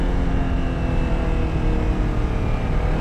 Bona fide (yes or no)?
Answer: yes